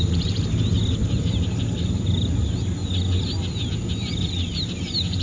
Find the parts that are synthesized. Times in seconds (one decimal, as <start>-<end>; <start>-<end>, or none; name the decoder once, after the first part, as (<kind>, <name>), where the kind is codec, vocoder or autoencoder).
none